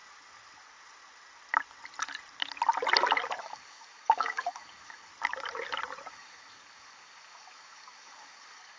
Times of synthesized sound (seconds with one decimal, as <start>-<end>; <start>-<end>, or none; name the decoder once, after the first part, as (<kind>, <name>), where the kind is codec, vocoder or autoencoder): 3.4-5.1 (codec, DAC); 6.1-8.8